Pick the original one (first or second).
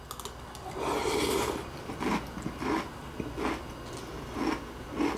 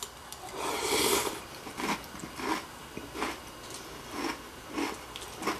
first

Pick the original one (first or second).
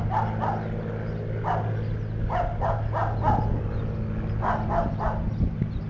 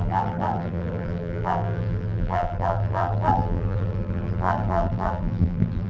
first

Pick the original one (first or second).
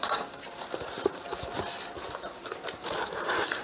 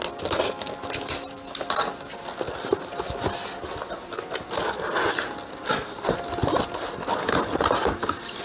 second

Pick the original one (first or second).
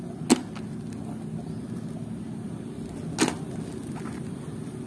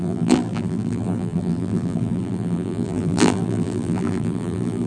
first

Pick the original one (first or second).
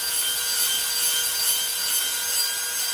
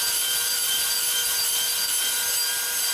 first